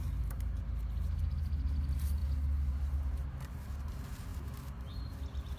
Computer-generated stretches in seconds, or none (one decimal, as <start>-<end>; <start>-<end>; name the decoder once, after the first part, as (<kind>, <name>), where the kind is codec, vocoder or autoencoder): none